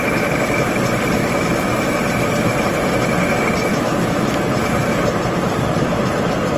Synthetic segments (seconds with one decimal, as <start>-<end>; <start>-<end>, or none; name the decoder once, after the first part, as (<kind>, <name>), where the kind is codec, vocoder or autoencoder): 1.2-2.0 (autoencoder, DAC-VAE); 3.7-4.4